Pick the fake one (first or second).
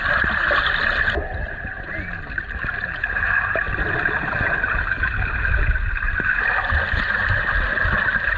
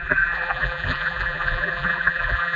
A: second